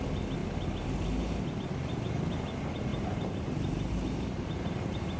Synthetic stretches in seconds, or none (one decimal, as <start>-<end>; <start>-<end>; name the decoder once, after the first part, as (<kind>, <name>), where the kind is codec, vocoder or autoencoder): 2.9-5.2 (vocoder, BigVGAN v2)